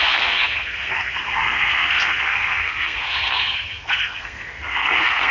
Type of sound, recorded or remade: remade